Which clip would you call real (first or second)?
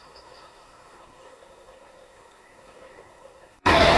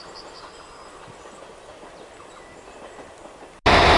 second